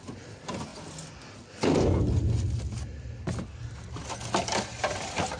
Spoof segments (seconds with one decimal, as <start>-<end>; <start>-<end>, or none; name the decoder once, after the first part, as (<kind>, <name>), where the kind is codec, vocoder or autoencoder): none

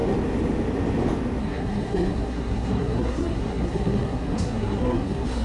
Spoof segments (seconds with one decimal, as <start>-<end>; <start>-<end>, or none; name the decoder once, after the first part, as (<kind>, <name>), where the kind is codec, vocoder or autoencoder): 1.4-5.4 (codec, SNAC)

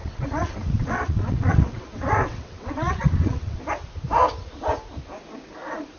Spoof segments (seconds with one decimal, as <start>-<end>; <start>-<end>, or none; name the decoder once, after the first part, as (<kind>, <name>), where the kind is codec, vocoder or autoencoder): 0.0-3.6 (vocoder, WaveNeXt)

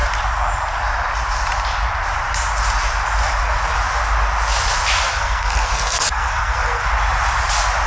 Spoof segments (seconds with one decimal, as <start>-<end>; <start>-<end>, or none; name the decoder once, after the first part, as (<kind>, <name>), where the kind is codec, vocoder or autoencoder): 5.1-6.9 (codec, SNAC)

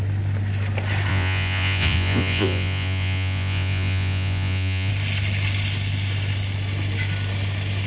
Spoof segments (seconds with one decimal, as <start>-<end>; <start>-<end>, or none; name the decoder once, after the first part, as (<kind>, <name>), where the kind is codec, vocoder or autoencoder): 1.1-4.9 (vocoder, Vocos)

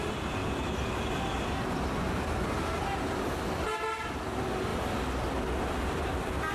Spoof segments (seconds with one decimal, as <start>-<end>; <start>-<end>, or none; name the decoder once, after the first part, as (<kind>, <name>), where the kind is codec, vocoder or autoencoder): none

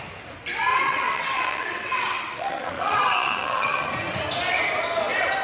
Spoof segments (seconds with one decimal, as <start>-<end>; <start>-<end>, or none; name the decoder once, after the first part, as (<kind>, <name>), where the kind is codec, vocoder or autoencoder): 0.7-3.9 (vocoder, WaveNeXt)